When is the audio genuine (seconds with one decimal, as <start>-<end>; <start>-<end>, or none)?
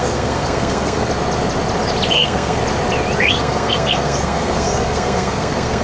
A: 1.1-2.1; 2.6-3.2